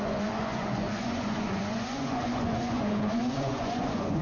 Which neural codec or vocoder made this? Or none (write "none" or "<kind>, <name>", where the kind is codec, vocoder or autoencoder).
vocoder, Vocos